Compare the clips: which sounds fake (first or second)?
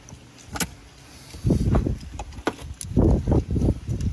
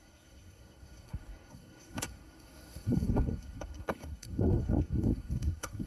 second